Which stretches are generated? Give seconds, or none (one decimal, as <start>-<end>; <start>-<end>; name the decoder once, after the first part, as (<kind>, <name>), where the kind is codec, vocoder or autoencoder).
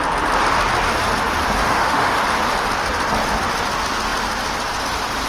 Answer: 1.6-2.2 (autoencoder, DAC-VAE)